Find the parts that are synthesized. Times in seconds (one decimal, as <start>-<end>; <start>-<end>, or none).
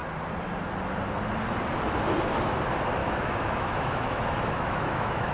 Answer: 3.0-5.3